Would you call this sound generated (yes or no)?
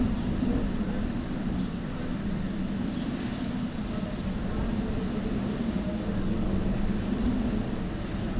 no